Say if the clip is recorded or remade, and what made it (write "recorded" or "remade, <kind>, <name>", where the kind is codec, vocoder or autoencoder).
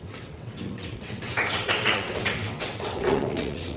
remade, vocoder, WaveNeXt